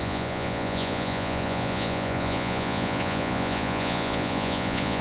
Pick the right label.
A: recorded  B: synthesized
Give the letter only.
B